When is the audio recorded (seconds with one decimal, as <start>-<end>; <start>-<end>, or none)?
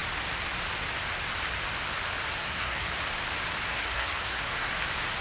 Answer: 0.0-2.4; 2.9-3.7; 4.7-5.2